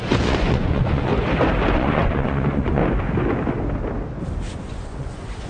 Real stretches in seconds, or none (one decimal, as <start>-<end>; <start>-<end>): 1.1-1.7; 2.8-4.6